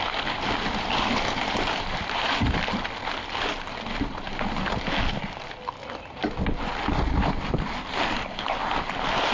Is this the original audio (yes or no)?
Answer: yes